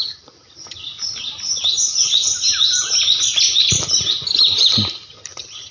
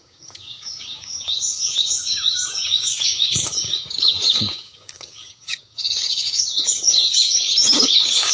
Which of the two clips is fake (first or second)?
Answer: second